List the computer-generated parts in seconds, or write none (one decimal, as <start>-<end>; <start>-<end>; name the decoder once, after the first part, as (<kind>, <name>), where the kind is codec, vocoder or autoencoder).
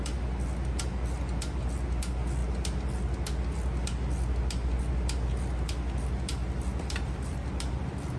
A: 6.3-7.5 (vocoder, BigVGAN v2)